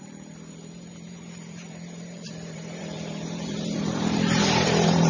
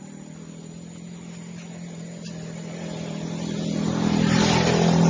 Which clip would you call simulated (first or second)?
first